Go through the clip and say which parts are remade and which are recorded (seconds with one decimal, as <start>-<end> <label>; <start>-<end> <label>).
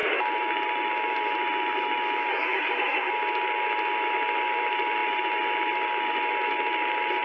0.0-2.3 recorded; 2.3-3.1 remade; 3.1-7.2 recorded